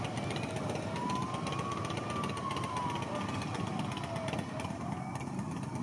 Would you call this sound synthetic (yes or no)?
no